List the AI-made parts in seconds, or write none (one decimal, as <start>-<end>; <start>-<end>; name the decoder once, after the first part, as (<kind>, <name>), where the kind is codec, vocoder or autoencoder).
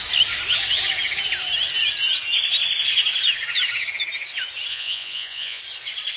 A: 4.7-5.6 (vocoder, Vocos)